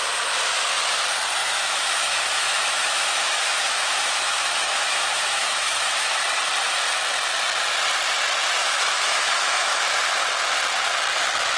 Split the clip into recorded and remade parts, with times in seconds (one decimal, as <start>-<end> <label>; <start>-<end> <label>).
0.0-1.4 recorded; 1.4-6.2 remade; 6.2-8.6 recorded; 8.6-9.8 remade; 9.8-11.6 recorded